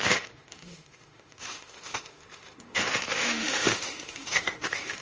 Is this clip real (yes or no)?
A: no